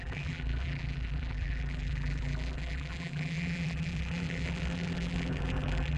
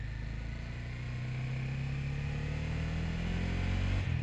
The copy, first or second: first